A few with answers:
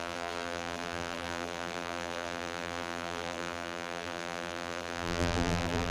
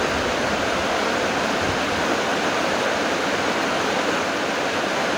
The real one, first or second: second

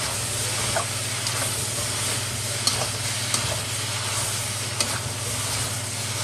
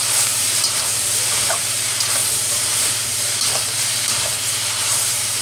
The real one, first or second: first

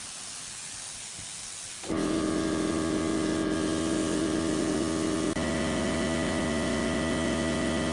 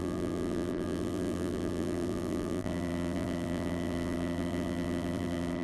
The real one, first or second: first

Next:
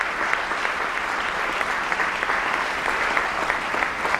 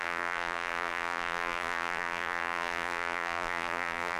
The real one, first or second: first